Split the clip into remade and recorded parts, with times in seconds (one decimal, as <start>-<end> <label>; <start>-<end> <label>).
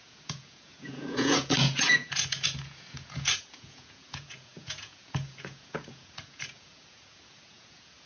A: 0.0-8.1 remade